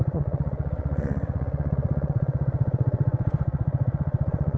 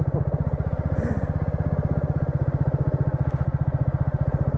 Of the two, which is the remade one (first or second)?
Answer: first